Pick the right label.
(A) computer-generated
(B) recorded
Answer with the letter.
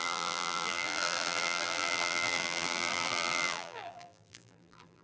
A